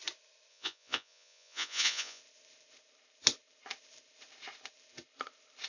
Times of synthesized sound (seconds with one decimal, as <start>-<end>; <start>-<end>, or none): 0.5-2.2